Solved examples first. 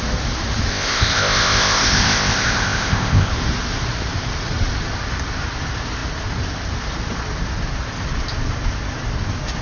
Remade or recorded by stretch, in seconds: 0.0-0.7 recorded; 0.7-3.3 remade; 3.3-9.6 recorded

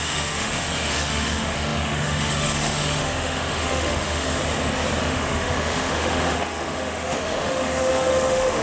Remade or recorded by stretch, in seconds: 0.0-4.4 remade; 4.4-5.0 recorded; 5.0-8.6 remade